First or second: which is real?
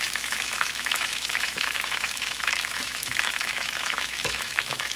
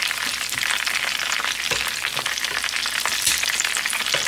second